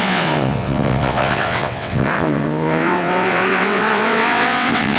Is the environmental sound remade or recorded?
remade